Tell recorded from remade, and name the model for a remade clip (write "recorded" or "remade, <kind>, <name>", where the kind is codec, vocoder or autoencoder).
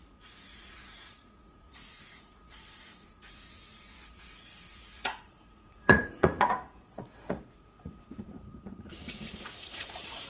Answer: remade, vocoder, Vocos